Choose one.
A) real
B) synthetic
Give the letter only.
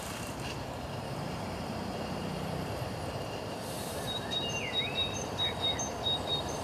B